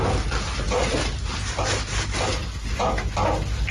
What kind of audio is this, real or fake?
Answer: real